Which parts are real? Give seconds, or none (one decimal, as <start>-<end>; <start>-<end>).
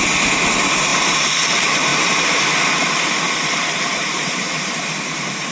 0.0-1.9